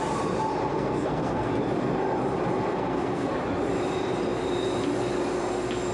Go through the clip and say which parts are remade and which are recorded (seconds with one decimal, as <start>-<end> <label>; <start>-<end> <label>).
0.0-0.7 recorded; 0.7-1.5 remade; 1.5-2.7 recorded; 2.7-3.3 remade; 3.3-5.9 recorded

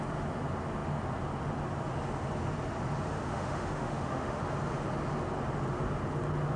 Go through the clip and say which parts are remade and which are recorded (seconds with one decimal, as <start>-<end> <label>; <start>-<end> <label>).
0.0-3.1 recorded; 3.1-4.4 remade; 4.4-6.6 recorded

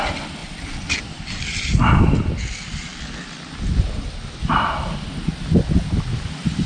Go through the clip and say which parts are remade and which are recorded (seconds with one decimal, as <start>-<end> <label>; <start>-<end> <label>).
0.0-6.7 recorded

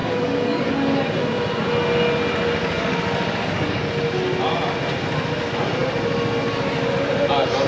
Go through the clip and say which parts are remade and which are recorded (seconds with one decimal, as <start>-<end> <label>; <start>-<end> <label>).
0.0-0.7 remade; 0.7-2.6 recorded; 2.6-3.9 remade; 3.9-7.7 recorded